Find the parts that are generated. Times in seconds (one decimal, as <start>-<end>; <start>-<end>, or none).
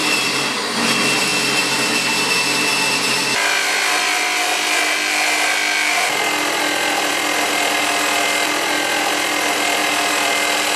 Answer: 0.0-0.6; 9.8-10.3